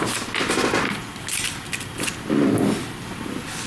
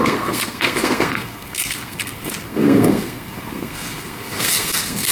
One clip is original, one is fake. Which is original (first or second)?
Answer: first